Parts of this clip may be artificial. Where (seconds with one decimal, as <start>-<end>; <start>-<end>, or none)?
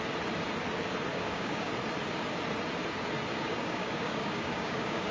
1.1-1.7; 3.3-5.1